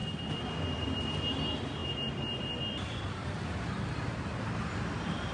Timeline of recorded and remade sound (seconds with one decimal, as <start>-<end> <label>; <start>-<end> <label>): 0.0-5.3 recorded